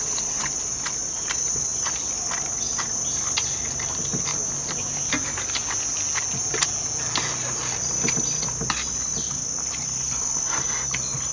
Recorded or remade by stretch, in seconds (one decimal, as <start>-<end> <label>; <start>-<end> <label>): 0.0-11.3 recorded

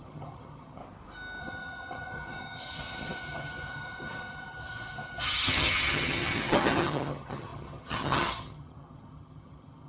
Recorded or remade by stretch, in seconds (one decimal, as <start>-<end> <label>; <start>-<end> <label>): 0.0-0.8 remade; 0.8-1.4 recorded; 1.4-9.9 remade